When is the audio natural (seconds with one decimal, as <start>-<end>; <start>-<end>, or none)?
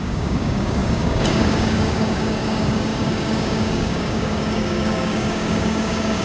none